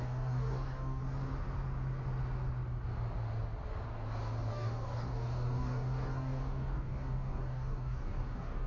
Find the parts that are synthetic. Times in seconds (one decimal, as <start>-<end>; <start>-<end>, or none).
0.0-1.0; 4.5-8.7